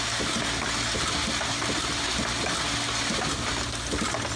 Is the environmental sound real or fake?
real